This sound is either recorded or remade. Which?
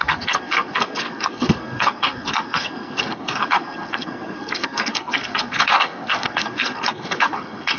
remade